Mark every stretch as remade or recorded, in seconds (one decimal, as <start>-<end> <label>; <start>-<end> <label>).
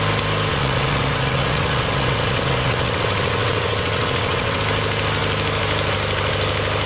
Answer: 0.0-0.5 recorded; 0.5-4.6 remade; 4.6-6.9 recorded